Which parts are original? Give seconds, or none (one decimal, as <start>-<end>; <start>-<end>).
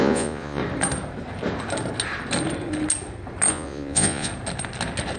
0.6-3.5; 4.3-5.2